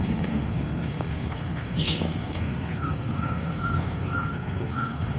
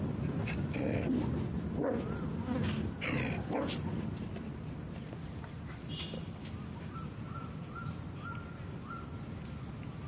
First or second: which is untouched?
second